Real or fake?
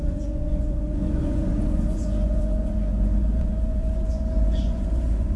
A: fake